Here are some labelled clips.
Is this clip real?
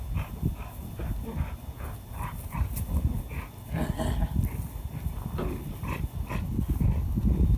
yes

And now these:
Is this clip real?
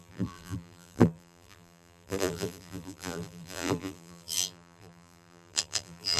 no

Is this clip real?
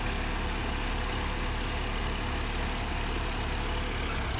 yes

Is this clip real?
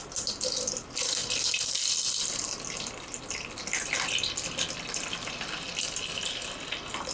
yes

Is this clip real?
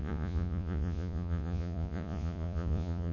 no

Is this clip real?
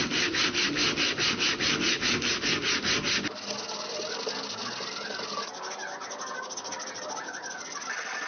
yes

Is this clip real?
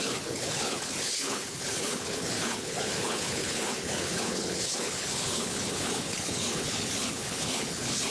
no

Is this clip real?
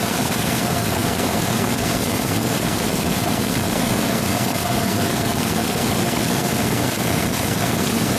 no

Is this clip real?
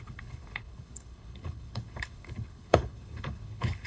no